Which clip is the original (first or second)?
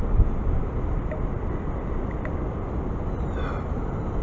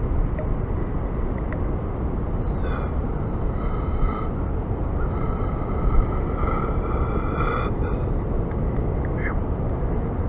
second